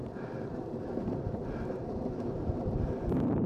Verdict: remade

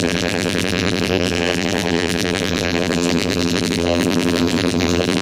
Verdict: remade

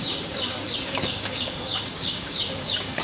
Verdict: remade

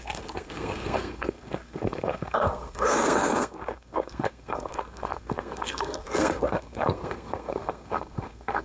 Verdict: remade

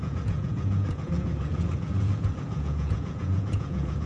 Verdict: remade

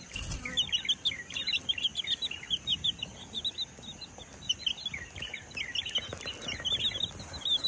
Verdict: recorded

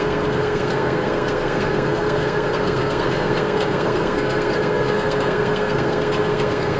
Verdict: remade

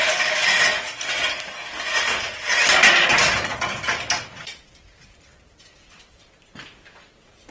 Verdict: recorded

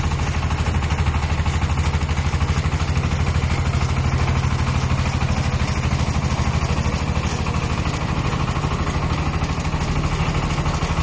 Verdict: recorded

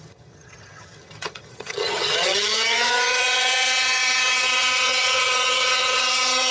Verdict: remade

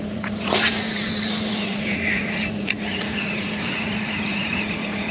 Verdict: remade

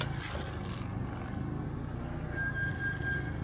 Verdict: recorded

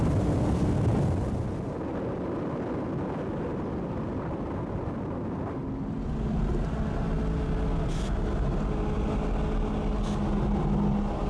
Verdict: recorded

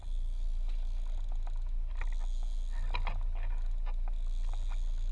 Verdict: recorded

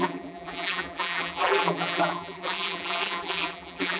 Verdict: remade